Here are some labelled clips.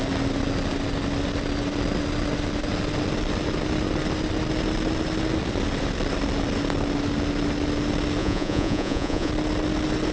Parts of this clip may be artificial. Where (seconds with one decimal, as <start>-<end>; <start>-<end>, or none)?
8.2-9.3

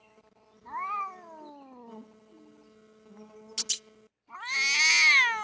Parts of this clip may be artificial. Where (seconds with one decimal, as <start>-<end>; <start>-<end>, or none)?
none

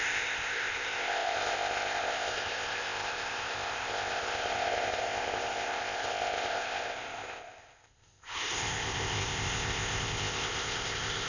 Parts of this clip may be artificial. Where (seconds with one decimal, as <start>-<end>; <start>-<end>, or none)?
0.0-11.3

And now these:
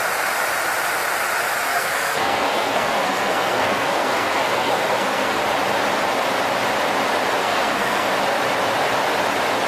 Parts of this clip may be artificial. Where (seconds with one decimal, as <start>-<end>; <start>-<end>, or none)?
1.7-5.4; 7.4-8.1